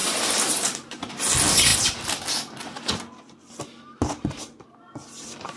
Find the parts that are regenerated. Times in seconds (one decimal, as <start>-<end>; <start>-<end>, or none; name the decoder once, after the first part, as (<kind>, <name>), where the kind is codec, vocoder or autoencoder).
0.0-1.2 (vocoder, BigVGAN v2)